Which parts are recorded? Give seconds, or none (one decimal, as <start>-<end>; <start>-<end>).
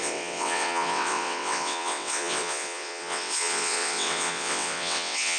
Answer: none